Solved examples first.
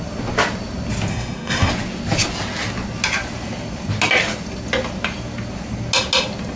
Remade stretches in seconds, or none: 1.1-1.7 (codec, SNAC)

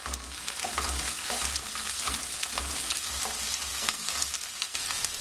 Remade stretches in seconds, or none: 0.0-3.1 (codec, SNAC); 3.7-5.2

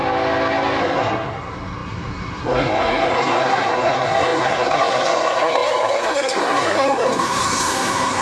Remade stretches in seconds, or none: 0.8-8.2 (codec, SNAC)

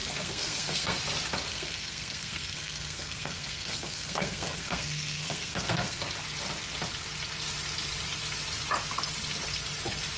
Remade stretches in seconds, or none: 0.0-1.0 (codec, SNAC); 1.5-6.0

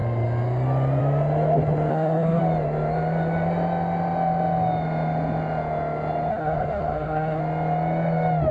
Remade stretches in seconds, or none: 1.9-2.4 (codec, SNAC); 6.3-7.4